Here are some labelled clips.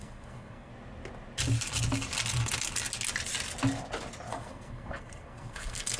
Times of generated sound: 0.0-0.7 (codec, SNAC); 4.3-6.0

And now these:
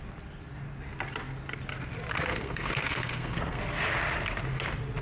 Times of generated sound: 2.3-3.6 (codec, SNAC)

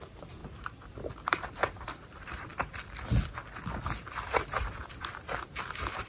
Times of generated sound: 0.0-2.5 (vocoder, BigVGAN v2); 3.8-6.1

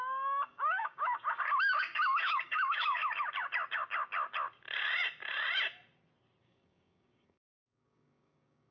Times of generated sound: 0.0-3.0 (codec, DAC); 6.4-8.7

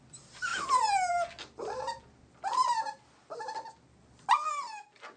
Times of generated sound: 2.0-3.3 (vocoder, BigVGAN v2)

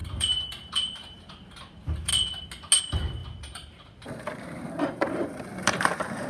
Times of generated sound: 0.0-2.1 (vocoder, BigVGAN v2); 2.8-6.3

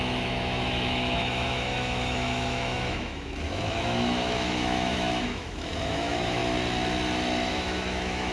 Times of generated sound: 0.0-6.4 (autoencoder, DAC-VAE); 7.5-8.3

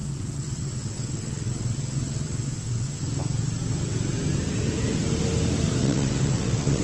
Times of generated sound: 0.0-3.0 (vocoder, WaveNeXt); 5.8-6.8